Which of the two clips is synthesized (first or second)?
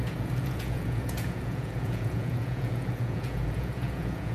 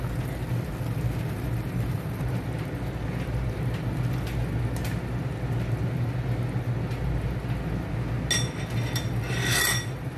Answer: first